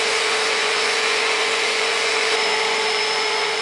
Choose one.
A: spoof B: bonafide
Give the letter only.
A